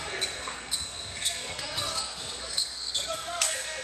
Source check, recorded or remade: remade